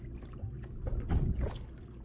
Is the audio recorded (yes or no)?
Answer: yes